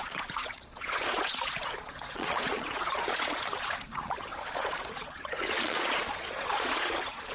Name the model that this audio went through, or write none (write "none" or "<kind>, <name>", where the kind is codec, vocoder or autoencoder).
vocoder, Vocos